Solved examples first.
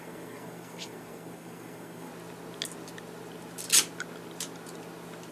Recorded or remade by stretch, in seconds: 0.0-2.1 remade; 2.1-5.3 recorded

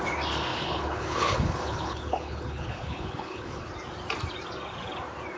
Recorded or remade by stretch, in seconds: 0.0-0.5 recorded; 0.5-3.7 remade; 3.7-5.4 recorded

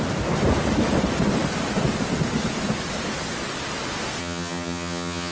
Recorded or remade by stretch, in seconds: 0.0-4.2 recorded; 4.2-5.3 remade

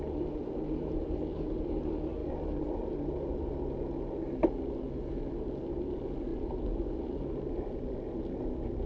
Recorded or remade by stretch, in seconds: 0.0-8.9 recorded

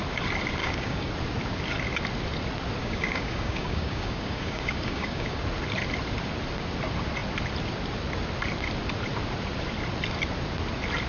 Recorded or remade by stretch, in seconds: 0.0-0.6 recorded; 0.6-1.1 remade; 1.1-2.8 recorded; 2.8-5.4 remade; 5.4-11.1 recorded

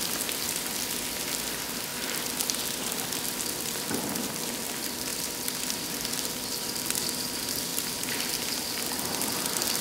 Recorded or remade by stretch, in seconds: 0.0-9.8 recorded

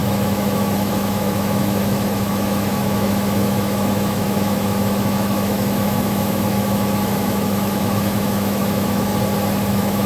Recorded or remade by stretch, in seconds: 0.0-9.1 remade; 9.1-9.7 recorded; 9.7-10.1 remade